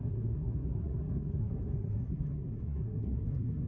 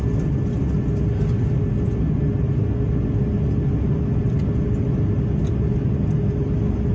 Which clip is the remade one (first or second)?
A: first